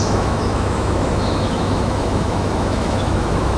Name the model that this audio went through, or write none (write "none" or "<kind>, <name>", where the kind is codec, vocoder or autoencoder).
autoencoder, DAC-VAE